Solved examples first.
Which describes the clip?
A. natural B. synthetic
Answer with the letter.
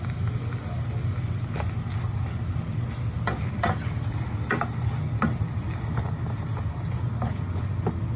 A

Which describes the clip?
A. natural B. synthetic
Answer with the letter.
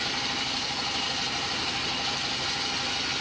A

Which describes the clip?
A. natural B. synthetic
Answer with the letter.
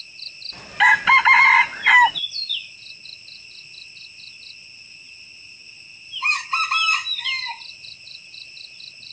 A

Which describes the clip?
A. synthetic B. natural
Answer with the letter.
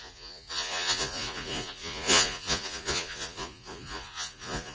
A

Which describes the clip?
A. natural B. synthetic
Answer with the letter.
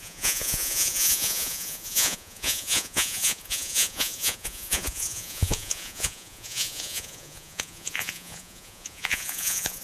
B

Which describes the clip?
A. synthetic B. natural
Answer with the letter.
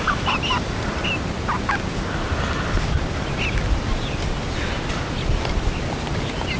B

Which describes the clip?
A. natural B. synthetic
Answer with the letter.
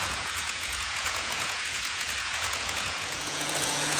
B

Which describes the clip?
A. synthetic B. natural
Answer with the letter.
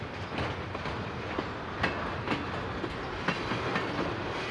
B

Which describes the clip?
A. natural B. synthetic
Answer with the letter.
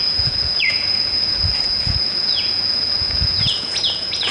B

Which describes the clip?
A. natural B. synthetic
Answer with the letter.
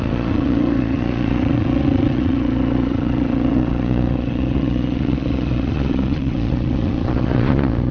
B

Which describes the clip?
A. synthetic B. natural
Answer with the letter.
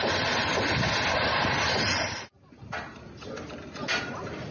B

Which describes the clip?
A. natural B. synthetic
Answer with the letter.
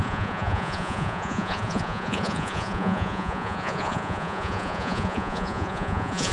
B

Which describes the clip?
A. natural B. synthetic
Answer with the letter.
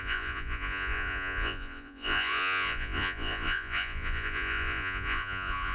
B